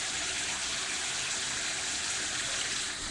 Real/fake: real